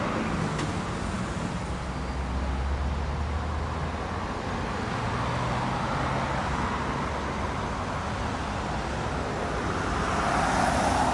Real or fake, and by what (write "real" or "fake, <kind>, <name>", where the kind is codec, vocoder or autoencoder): real